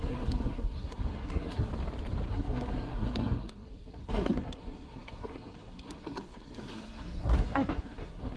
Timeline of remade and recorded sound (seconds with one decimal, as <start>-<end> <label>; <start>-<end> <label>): 0.0-1.7 remade; 1.7-2.3 recorded; 2.3-8.4 remade